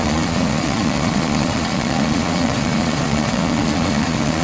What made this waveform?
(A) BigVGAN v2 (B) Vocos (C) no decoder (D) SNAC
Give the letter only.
B